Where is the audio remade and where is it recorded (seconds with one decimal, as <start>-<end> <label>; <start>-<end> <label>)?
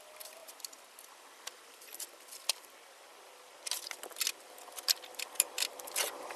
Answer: 0.0-6.4 recorded